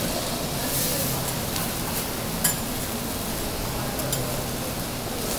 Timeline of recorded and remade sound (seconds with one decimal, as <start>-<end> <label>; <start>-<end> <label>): 0.0-5.4 recorded